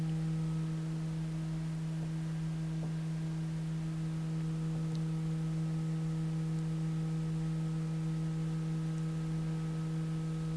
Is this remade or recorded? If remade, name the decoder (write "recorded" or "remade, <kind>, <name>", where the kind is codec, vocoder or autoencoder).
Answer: recorded